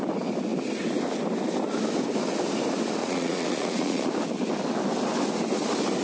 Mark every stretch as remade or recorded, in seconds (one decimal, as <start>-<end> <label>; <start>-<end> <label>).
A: 0.0-3.0 recorded; 3.0-4.1 remade; 4.1-6.0 recorded